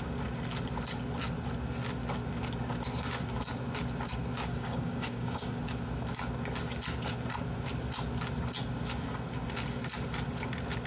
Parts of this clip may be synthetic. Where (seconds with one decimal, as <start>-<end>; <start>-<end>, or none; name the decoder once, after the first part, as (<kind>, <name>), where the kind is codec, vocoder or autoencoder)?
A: 4.5-5.6 (codec, DAC)